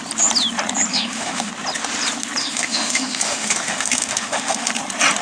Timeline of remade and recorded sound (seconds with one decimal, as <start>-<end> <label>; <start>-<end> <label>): 0.0-0.9 recorded; 0.9-1.5 remade; 1.5-2.4 recorded; 2.4-4.7 remade; 4.7-5.2 recorded